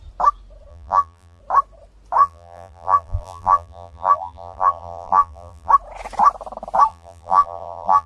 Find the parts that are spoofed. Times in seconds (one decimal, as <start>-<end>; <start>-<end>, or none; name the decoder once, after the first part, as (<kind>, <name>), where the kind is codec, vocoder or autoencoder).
0.7-1.4 (vocoder, BigVGAN v2); 2.2-5.7; 6.9-8.1